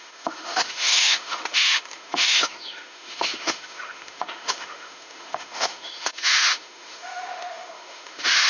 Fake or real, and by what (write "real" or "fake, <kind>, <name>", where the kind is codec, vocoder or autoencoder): fake, autoencoder, DAC-VAE